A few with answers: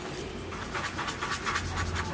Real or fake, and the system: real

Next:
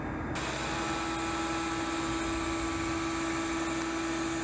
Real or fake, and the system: real